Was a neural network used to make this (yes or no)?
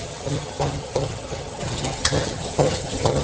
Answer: yes